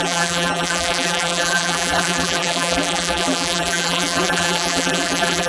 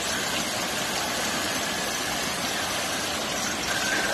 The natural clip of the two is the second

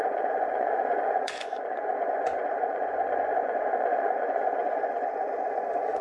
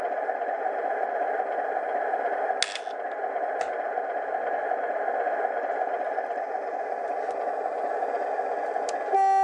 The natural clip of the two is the second